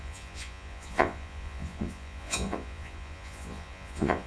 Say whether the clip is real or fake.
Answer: fake